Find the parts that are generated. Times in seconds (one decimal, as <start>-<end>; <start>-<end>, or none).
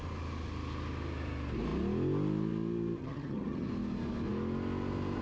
3.0-3.7